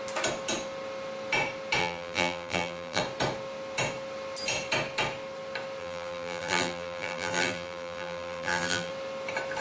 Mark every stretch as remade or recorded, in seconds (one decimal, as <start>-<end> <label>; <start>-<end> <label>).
0.0-1.8 recorded; 1.8-3.0 remade; 3.0-5.8 recorded; 5.8-8.9 remade; 8.9-9.6 recorded